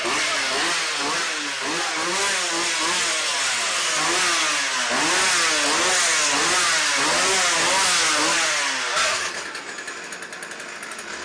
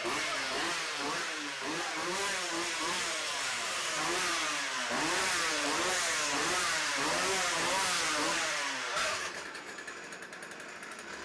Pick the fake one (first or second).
second